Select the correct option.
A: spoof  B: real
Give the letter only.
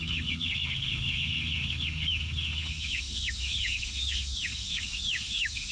A